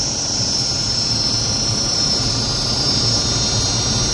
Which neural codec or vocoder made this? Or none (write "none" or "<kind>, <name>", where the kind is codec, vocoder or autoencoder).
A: vocoder, BigVGAN v2